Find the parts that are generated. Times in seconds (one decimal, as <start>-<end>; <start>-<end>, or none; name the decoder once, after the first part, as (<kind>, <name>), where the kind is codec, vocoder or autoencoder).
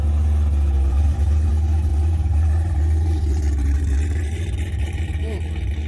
0.9-1.5 (vocoder, BigVGAN v2); 1.9-5.4